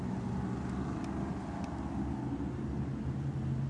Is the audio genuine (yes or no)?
yes